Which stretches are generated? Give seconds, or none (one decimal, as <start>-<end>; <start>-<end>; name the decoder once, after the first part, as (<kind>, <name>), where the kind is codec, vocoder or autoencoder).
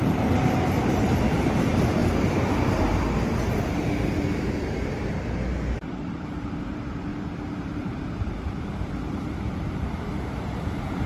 0.0-2.0 (vocoder, BigVGAN v2); 5.7-7.1; 7.6-11.1